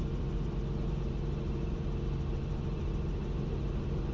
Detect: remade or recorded recorded